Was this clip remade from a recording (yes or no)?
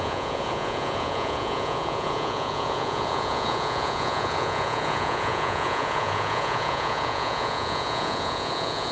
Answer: yes